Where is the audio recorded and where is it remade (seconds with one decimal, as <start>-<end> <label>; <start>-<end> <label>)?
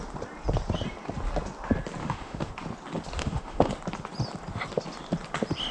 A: 0.0-2.0 recorded; 2.0-2.5 remade; 2.5-3.2 recorded; 3.2-3.7 remade; 3.7-5.7 recorded